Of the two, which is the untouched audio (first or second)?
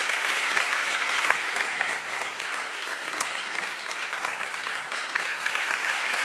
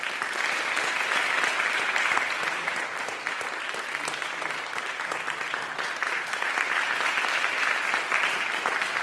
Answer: second